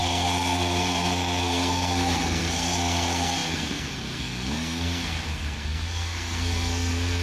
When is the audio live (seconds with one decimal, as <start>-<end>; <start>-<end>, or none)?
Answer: none